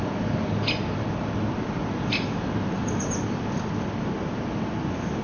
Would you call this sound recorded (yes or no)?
yes